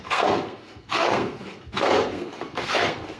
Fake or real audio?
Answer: fake